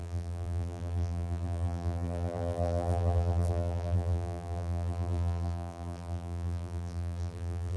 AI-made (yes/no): yes